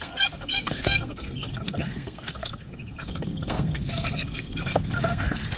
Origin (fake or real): fake